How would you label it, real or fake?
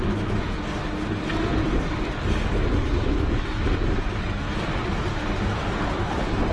real